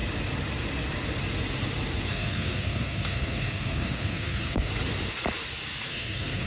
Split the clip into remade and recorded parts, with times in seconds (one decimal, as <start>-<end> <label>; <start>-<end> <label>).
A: 0.0-2.1 recorded; 2.1-4.7 remade; 4.7-5.9 recorded; 5.9-6.5 remade